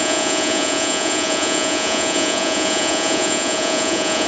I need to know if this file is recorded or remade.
remade